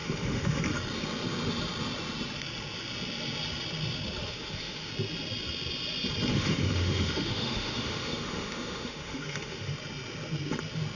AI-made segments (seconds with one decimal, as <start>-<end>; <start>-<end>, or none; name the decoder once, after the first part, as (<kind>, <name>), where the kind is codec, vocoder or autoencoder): 0.0-0.6 (autoencoder, DAC-VAE); 4.2-4.9; 6.3-9.7